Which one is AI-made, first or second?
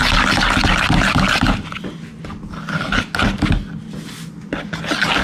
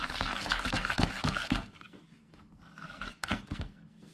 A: second